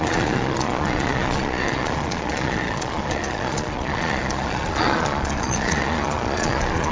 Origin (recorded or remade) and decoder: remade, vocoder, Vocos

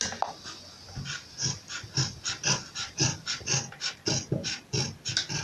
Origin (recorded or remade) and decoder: recorded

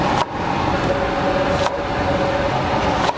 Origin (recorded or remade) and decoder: recorded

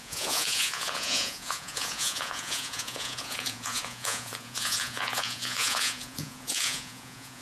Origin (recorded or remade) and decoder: remade, vocoder, Vocos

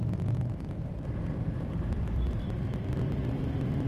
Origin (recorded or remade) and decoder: remade, vocoder, BigVGAN v2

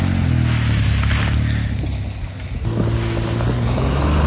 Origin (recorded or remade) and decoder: recorded